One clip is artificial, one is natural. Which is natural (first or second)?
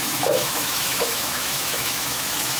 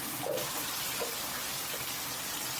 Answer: second